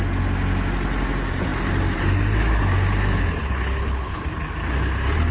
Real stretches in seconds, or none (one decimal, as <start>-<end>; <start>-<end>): 0.0-3.4; 4.2-5.3